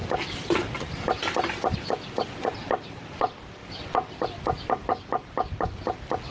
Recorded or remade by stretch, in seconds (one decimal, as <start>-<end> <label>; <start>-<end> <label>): 0.0-6.3 recorded